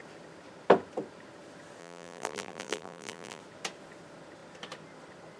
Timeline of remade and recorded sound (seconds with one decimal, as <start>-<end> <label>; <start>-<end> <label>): 0.0-1.8 recorded; 1.8-3.4 remade; 3.4-5.4 recorded